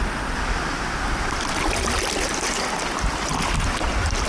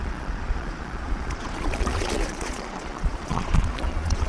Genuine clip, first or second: first